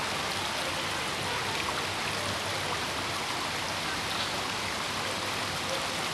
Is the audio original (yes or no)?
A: yes